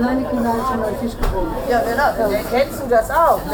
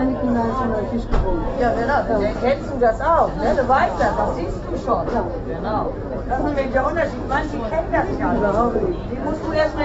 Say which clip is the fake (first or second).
first